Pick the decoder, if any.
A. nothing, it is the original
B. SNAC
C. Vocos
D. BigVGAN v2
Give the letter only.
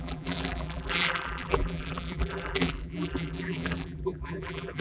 D